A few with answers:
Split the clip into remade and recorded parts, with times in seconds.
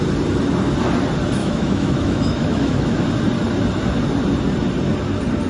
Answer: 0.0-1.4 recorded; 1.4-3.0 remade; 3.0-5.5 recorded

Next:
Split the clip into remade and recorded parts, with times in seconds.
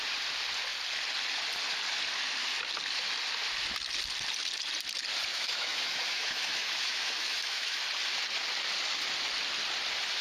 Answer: 0.0-5.3 recorded; 5.3-7.8 remade; 7.8-10.2 recorded